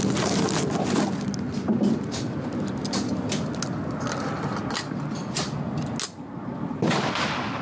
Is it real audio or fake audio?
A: real